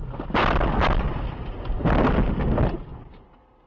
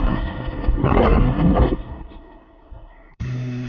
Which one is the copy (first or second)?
second